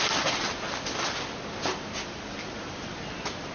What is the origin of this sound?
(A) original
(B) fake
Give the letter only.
A